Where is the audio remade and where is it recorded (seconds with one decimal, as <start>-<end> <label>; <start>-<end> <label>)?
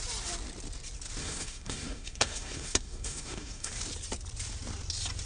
0.0-1.2 recorded; 1.2-3.7 remade; 3.7-5.3 recorded